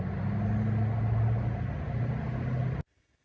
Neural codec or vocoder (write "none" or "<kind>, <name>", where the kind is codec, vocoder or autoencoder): none